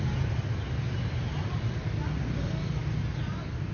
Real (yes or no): yes